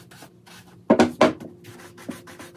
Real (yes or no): yes